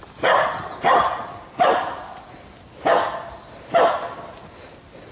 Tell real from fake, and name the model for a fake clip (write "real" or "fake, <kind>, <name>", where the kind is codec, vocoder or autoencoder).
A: real